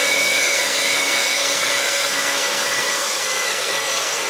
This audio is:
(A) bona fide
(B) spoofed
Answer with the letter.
B